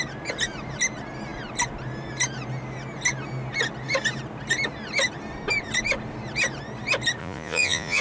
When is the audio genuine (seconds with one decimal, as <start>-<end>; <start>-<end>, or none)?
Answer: 0.0-7.2